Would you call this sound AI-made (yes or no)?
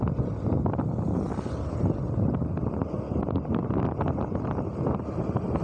no